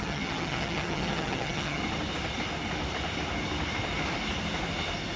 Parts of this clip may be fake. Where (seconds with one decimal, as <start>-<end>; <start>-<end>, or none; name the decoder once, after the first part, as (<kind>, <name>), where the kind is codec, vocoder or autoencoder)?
0.0-1.8 (vocoder, HiFi-GAN)